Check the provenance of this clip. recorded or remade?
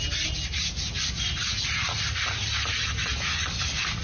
recorded